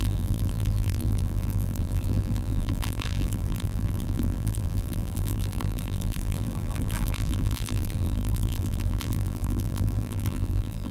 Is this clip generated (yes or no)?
yes